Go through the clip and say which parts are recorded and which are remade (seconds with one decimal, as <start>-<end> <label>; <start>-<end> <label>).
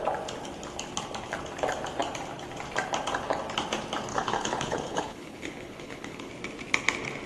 0.0-4.1 recorded; 4.1-6.3 remade; 6.3-7.3 recorded